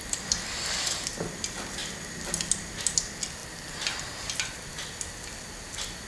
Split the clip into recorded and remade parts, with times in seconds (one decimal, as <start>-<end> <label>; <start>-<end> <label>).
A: 0.0-6.1 recorded